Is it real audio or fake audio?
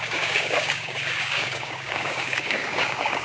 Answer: fake